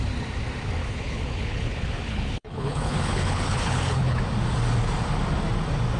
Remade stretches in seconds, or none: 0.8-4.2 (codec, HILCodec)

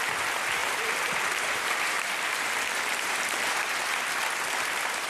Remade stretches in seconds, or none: 0.6-3.7 (vocoder, BigVGAN v2)

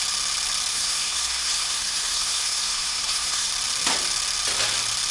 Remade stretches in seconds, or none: 0.7-3.5 (codec, SNAC)

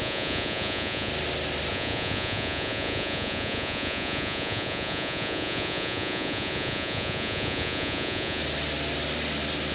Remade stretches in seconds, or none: 0.0-1.1 (vocoder, Vocos); 1.7-8.4